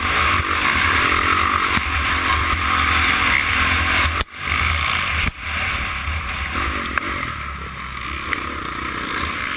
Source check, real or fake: real